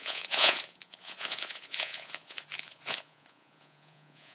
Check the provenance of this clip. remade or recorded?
remade